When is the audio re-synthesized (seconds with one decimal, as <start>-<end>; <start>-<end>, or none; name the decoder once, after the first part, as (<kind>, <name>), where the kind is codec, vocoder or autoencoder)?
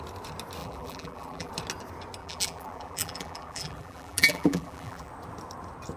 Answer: 0.6-1.5 (vocoder, BigVGAN v2); 2.2-5.1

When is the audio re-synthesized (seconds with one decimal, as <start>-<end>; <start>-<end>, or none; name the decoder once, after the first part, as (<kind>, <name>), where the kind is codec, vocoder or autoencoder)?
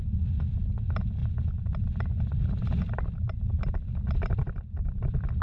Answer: none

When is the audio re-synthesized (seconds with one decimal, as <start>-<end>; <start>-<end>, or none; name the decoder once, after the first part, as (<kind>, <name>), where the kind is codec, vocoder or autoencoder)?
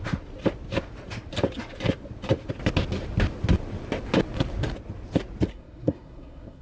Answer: 5.5-6.6 (codec, SNAC)